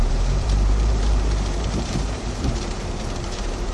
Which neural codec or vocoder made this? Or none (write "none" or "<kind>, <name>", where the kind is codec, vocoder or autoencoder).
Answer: vocoder, BigVGAN v2